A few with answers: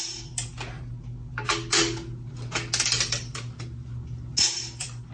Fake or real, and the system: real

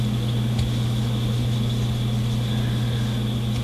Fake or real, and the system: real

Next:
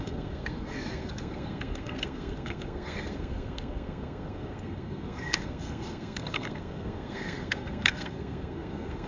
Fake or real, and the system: fake, codec, SNAC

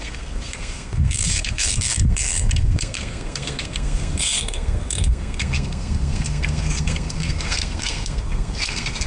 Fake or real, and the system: fake, codec, SNAC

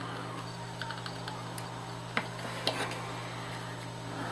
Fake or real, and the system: real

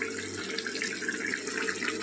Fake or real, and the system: real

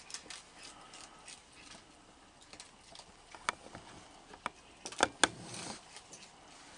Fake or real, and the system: real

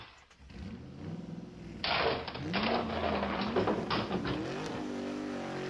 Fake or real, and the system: real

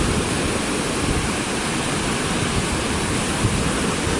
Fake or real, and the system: real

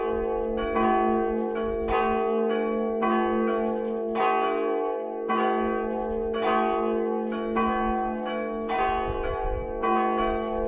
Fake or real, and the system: real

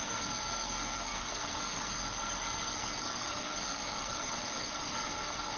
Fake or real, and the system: fake, codec, SNAC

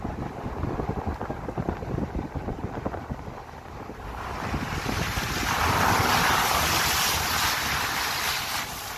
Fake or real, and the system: real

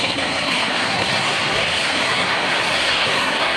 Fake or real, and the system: fake, codec, SNAC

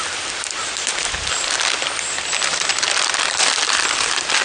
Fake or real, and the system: real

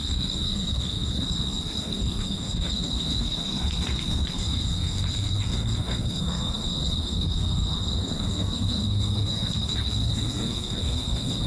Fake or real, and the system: fake, codec, SNAC